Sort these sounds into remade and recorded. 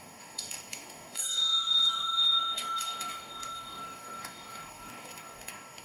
remade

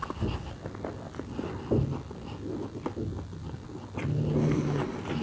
recorded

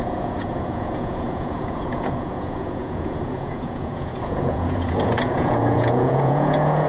remade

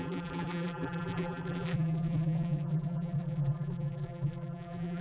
remade